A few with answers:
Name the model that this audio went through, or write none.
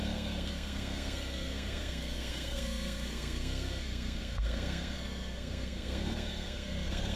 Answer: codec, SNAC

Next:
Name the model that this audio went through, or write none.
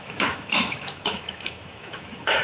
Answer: autoencoder, DAC-VAE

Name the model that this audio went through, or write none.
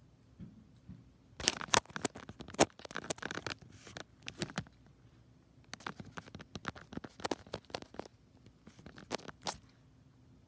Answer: none